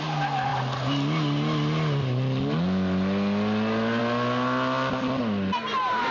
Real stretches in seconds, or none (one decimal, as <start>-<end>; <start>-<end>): 0.0-6.1